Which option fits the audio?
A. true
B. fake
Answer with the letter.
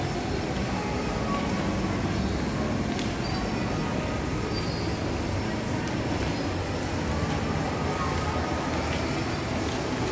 A